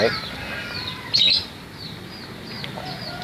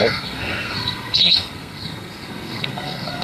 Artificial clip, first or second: second